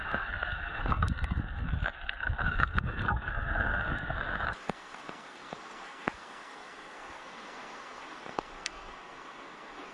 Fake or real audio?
fake